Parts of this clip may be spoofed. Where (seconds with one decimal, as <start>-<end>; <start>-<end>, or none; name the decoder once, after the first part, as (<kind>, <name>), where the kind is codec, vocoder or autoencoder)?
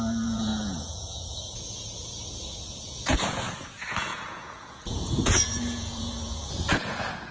0.0-7.3 (vocoder, Vocos)